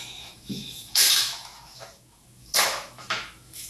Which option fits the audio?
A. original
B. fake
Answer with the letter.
B